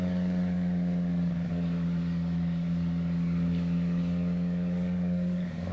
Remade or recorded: remade